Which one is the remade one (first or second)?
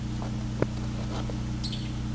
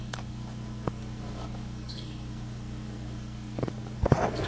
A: second